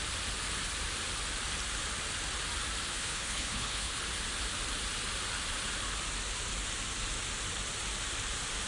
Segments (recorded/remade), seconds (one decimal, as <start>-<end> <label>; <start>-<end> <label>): 0.0-2.9 recorded; 2.9-4.0 remade; 4.0-8.7 recorded